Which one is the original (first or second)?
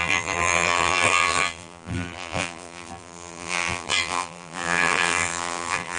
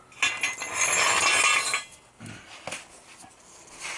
second